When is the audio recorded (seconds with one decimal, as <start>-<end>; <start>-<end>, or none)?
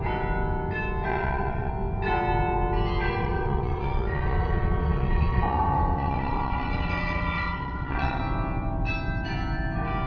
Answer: 0.0-1.1; 1.7-3.2; 8.2-10.1